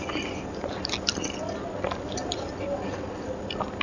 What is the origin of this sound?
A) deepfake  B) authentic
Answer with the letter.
B